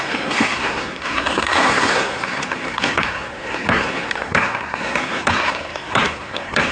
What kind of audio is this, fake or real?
fake